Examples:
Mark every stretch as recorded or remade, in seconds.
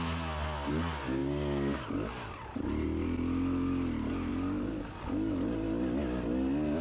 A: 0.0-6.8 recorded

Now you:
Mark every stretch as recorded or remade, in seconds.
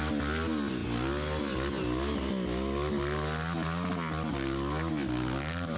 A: 0.0-5.8 recorded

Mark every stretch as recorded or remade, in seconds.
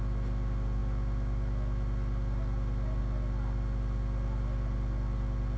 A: 0.0-5.6 recorded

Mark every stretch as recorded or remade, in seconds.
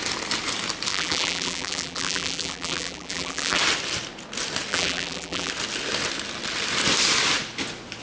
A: 0.0-0.9 recorded; 0.9-3.6 remade; 3.6-4.7 recorded; 4.7-5.5 remade; 5.5-8.0 recorded